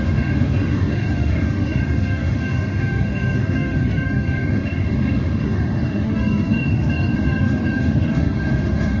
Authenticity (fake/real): fake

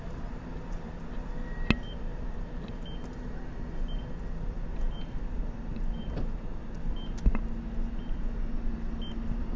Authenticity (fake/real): real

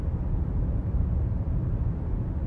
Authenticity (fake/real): real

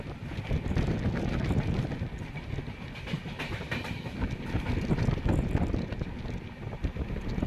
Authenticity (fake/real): real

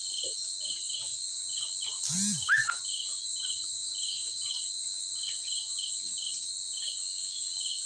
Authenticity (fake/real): real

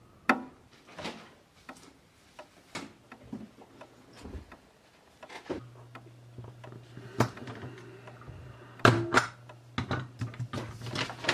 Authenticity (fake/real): real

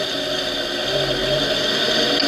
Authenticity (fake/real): real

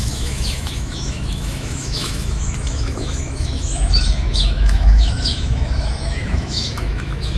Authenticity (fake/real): fake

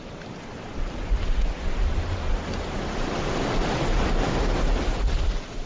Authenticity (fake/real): real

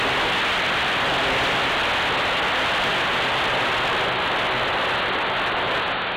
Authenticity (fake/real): real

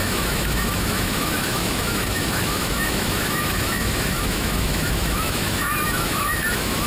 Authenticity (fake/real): fake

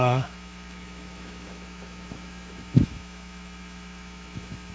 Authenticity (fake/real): fake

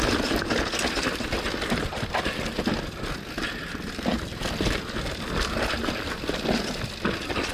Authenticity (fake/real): real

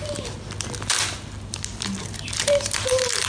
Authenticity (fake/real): real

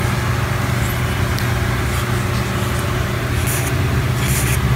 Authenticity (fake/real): real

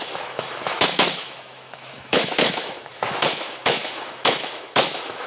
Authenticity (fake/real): fake